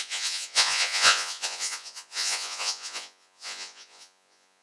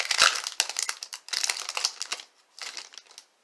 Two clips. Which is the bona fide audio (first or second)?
second